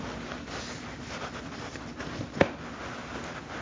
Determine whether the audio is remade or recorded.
recorded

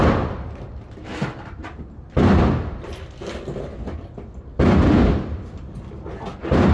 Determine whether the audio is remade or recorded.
recorded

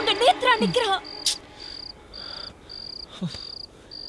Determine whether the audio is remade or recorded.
recorded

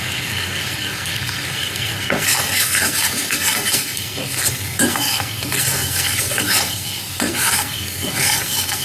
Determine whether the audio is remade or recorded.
remade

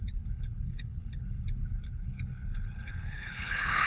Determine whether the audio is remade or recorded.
remade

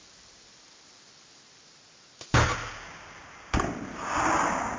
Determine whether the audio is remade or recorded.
recorded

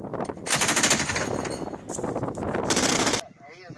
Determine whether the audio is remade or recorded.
recorded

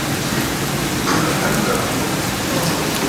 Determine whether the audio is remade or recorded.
recorded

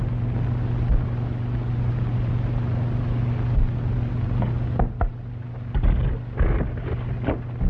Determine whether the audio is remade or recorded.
recorded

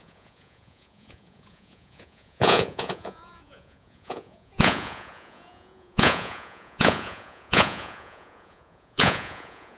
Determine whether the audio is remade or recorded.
remade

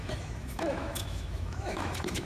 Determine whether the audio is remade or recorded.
remade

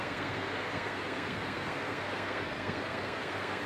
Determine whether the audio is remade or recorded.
remade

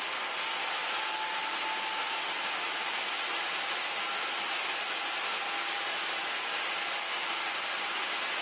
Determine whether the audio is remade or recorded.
recorded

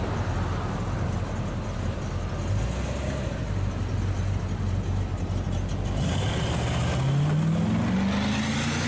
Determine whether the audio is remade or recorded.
recorded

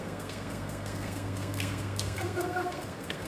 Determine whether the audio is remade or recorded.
remade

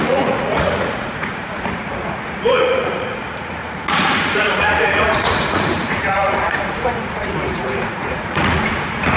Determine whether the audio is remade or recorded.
remade